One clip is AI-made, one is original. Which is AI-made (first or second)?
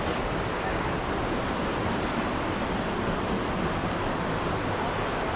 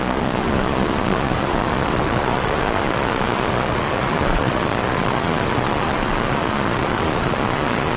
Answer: second